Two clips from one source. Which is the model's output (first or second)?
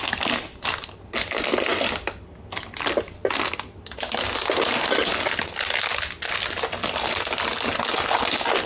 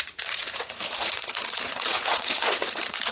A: second